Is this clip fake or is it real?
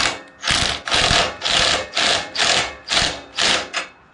real